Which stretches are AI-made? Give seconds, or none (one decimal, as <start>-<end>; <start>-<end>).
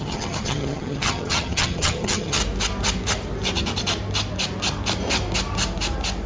0.0-2.4